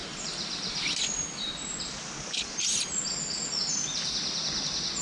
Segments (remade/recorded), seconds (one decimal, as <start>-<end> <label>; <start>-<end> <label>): 0.0-5.0 recorded